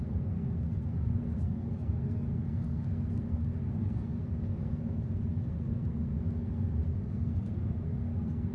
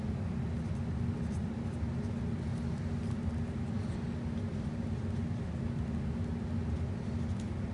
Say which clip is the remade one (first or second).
first